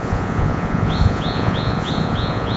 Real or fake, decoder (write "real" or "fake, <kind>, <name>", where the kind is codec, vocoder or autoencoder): fake, vocoder, Vocos